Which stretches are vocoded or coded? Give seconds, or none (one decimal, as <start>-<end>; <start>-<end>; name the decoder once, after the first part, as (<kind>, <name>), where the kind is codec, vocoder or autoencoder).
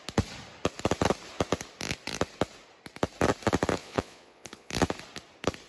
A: 3.8-4.7 (vocoder, Vocos)